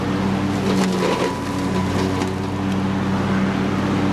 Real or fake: real